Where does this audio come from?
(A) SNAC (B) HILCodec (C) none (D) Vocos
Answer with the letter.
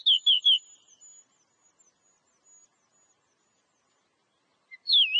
C